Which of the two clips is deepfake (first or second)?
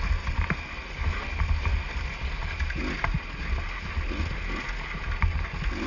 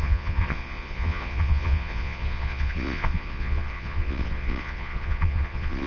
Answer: second